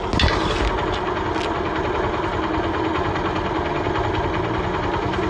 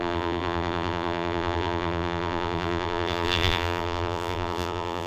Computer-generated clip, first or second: second